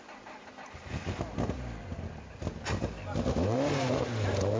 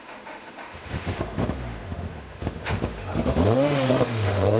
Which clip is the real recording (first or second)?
first